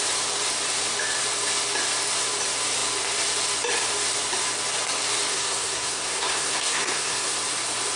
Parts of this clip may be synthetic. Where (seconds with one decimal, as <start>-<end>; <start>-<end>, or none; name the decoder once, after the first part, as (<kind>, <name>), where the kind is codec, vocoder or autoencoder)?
5.3-7.4 (codec, SNAC)